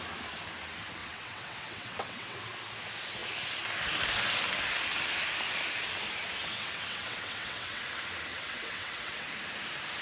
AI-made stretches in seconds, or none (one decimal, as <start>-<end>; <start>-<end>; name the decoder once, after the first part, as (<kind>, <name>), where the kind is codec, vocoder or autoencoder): 1.0-2.4 (vocoder, WaveNeXt); 6.4-7.8; 8.3-9.3